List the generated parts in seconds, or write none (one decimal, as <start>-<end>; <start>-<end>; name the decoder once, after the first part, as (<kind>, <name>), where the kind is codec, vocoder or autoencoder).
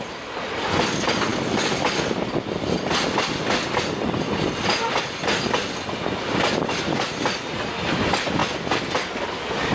none